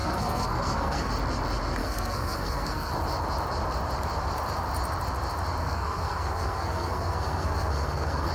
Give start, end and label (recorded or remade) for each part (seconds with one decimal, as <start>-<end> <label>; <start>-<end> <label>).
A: 0.0-1.1 remade; 1.1-1.8 recorded; 1.8-2.9 remade; 2.9-5.6 recorded; 5.6-8.3 remade